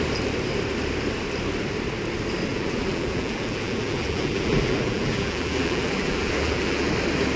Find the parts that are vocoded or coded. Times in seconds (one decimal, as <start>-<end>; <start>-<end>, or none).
2.5-6.9